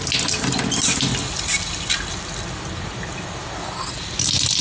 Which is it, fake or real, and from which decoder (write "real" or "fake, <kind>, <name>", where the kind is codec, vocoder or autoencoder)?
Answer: real